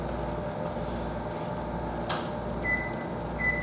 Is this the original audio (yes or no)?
yes